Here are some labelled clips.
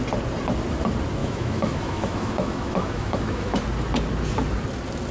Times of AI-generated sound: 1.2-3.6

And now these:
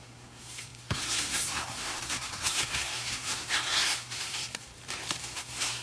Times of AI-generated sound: 0.0-4.7; 5.2-5.8

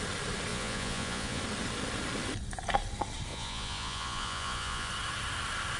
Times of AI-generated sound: 0.5-1.4; 3.3-4.9

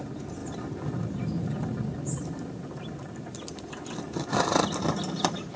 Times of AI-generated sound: none